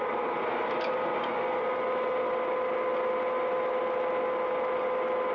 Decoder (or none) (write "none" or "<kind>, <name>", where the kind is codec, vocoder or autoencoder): none